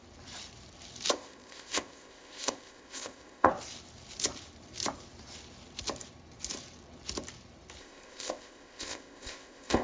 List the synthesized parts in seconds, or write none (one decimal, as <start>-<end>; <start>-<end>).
1.1-3.5; 7.8-9.8